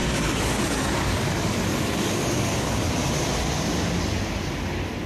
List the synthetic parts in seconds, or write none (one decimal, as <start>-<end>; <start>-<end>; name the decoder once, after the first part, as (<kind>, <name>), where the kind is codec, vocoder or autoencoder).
0.0-2.9 (codec, DAC)